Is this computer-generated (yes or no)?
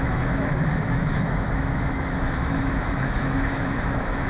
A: yes